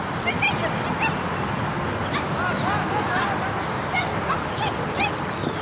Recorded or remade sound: recorded